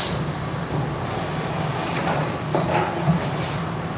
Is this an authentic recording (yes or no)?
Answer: yes